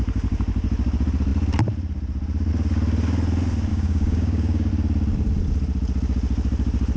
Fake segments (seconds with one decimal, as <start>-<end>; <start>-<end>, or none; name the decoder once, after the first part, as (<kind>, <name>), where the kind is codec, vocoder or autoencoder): 3.7-4.7 (codec, DAC)